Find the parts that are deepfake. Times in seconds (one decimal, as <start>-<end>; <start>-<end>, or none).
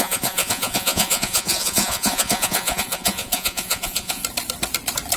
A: 0.0-4.2